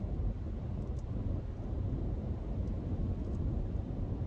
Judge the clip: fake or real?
real